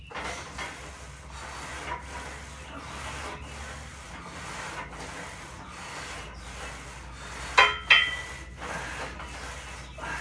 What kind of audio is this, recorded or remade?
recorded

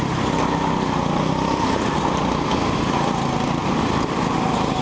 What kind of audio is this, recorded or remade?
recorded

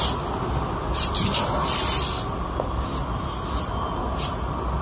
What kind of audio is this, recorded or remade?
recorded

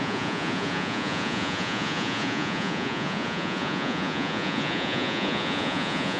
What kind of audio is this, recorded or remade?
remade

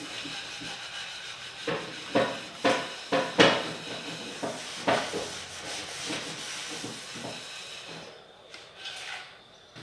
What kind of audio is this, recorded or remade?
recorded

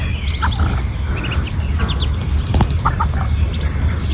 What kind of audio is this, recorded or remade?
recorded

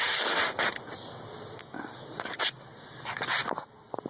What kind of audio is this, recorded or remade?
recorded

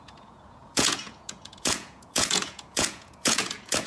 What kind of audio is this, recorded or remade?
remade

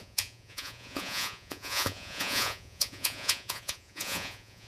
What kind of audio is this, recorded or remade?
remade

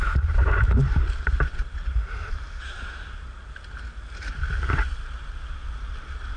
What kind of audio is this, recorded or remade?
recorded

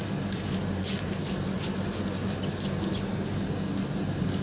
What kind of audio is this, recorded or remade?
recorded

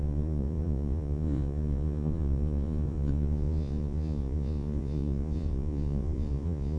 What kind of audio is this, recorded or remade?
remade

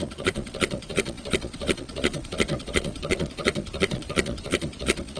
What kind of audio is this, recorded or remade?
remade